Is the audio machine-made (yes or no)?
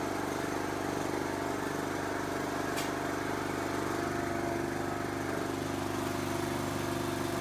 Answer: no